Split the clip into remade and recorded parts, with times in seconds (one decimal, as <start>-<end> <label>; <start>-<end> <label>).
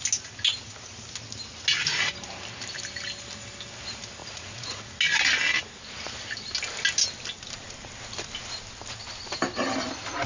0.0-4.2 recorded; 4.2-4.8 remade; 4.8-10.3 recorded